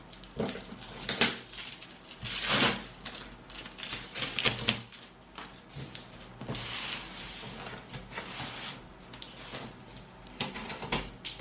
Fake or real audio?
real